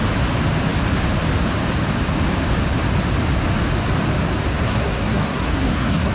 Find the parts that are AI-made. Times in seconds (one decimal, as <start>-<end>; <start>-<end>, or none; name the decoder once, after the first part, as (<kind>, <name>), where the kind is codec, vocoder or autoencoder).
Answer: 4.5-6.1 (codec, SNAC)